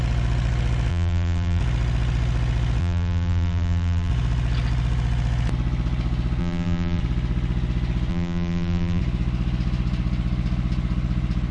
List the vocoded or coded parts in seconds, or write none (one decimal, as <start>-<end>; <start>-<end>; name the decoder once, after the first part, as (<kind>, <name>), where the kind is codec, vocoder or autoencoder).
0.9-1.6 (vocoder, BigVGAN v2); 2.8-4.1; 6.4-7.0; 8.1-9.0